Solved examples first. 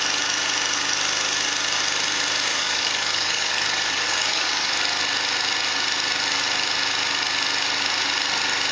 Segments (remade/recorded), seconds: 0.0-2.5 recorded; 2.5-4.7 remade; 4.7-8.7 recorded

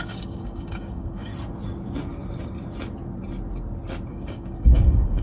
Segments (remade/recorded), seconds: 0.0-1.3 remade; 1.3-4.1 recorded; 4.1-5.2 remade

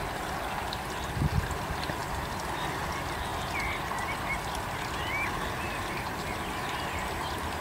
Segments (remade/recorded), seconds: 0.0-7.6 recorded